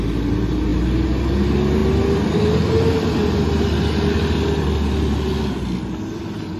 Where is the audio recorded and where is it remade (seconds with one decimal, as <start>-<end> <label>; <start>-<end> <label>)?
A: 0.0-6.6 recorded